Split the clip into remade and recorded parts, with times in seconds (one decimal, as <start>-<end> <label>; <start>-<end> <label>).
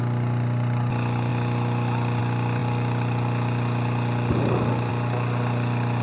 0.0-6.0 recorded